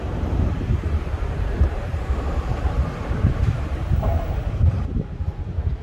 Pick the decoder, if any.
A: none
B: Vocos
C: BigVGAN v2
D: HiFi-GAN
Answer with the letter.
C